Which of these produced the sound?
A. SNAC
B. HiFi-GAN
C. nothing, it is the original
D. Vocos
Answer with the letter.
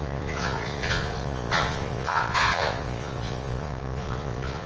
D